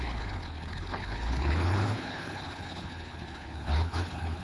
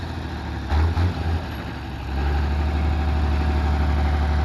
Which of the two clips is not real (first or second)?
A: first